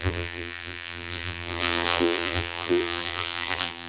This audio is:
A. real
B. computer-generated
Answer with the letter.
B